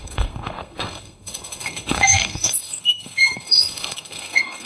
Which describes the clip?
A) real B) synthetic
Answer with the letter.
B